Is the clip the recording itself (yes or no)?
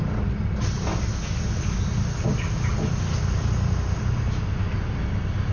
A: yes